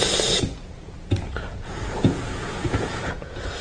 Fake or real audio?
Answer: fake